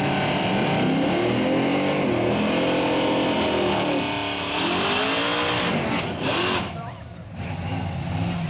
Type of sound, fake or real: real